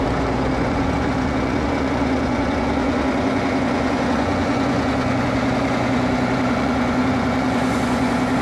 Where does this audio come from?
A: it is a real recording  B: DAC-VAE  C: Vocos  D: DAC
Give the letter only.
C